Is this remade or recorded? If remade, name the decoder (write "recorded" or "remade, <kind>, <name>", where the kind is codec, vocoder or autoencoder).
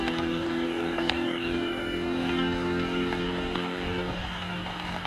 remade, codec, DAC